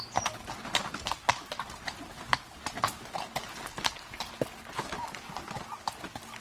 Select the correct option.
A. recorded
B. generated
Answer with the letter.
A